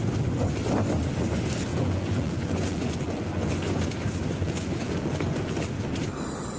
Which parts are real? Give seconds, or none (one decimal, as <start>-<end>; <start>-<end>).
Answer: 0.0-1.7; 5.6-6.6